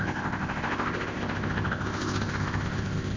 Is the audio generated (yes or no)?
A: yes